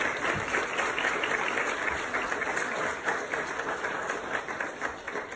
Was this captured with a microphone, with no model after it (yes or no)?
yes